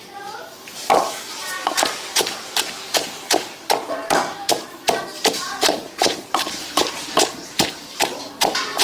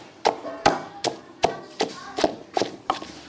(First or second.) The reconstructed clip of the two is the first